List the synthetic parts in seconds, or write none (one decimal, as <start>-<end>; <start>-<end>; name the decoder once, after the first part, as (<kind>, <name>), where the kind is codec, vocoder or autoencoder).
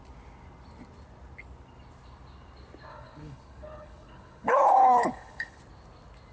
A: 2.9-5.6 (codec, HILCodec)